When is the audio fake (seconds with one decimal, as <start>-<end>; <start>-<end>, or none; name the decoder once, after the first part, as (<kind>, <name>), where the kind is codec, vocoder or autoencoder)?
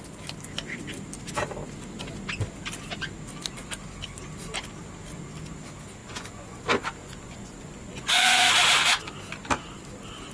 6.0-6.6 (vocoder, Vocos); 7.0-8.5